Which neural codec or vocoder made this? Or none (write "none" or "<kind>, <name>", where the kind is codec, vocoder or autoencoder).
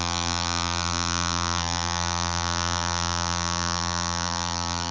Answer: vocoder, BigVGAN v2